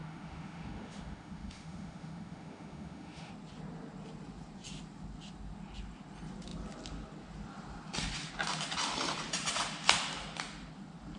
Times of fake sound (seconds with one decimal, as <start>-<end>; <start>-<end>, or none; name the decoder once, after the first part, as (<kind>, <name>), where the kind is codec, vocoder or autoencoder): 0.0-3.3 (autoencoder, DAC-VAE)